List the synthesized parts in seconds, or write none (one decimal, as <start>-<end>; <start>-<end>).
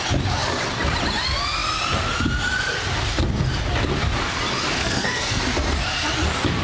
4.8-5.4